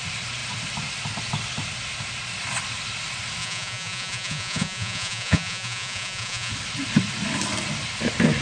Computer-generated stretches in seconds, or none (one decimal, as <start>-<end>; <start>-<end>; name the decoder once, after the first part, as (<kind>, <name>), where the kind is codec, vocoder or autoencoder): 3.4-6.5 (vocoder, Vocos)